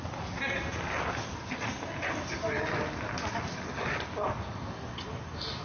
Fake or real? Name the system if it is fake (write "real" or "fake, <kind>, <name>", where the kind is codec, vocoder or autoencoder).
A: real